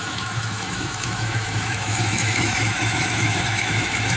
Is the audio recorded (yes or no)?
no